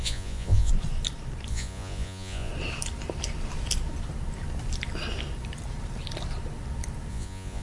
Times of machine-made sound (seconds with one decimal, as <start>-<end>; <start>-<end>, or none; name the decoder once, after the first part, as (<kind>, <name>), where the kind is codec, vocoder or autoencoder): 0.0-0.7 (vocoder, Vocos); 1.5-2.5; 7.1-7.6